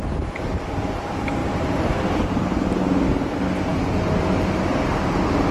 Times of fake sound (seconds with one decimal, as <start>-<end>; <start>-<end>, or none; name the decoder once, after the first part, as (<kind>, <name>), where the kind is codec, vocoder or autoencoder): 1.4-2.3 (vocoder, BigVGAN v2)